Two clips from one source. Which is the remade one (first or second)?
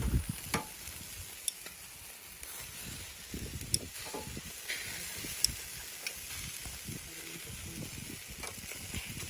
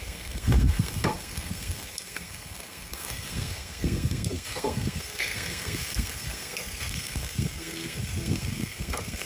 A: second